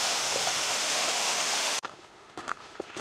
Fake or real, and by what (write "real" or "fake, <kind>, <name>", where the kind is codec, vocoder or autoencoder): fake, autoencoder, DAC-VAE